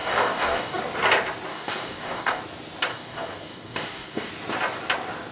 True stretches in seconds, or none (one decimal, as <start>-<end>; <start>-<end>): 0.8-1.5; 2.4-2.9; 4.3-5.3